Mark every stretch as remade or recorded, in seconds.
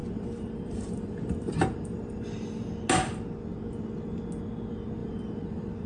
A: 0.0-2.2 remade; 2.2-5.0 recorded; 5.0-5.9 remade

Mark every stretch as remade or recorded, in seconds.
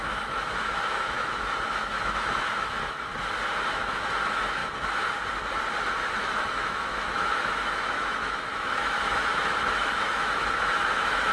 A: 0.0-3.1 remade; 3.1-3.7 recorded; 3.7-4.6 remade; 4.6-6.0 recorded; 6.0-11.3 remade